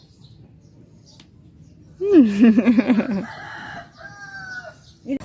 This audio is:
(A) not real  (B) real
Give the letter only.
B